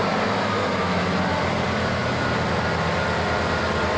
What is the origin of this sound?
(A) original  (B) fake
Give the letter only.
A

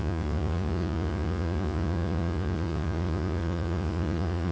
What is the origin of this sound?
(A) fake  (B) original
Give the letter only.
A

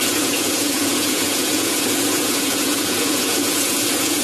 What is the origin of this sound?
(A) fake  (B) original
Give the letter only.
A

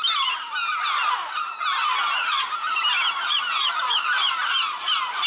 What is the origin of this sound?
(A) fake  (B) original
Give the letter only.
B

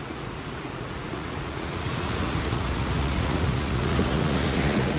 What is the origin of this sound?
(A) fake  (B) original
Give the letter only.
A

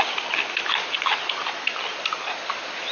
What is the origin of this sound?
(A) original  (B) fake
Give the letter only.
A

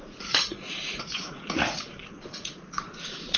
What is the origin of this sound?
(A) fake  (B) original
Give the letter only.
A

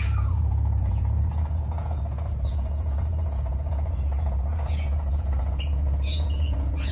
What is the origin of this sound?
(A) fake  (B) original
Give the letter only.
A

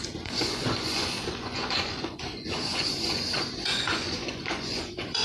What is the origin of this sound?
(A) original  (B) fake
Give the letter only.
B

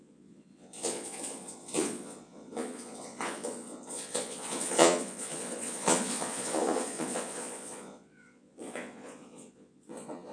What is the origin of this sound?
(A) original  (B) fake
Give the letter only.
B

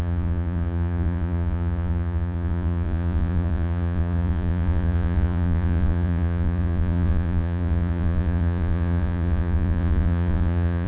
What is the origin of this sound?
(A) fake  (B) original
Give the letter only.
A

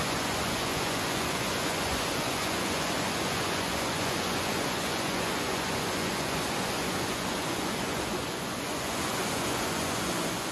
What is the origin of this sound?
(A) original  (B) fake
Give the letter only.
B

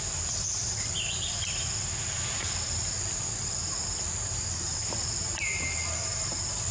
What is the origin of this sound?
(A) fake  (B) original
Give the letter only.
B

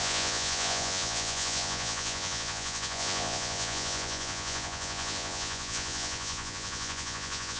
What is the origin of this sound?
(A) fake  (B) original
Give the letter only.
A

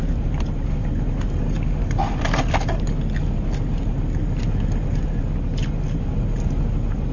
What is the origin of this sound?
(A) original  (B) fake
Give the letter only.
A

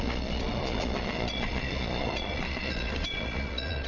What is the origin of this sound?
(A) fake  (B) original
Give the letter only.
A